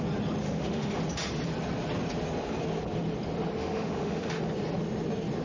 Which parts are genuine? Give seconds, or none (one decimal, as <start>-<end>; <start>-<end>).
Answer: 0.0-0.4; 0.9-3.6; 4.4-5.4